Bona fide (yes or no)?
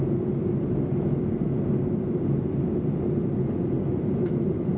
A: yes